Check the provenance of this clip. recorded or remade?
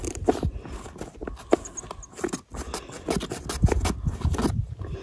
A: recorded